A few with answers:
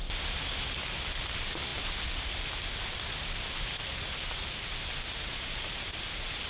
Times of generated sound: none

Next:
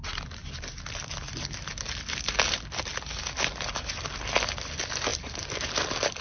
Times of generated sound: none